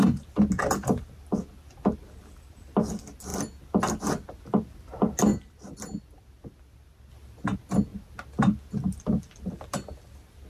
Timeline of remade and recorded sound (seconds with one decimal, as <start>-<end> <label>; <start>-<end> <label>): 0.0-10.5 recorded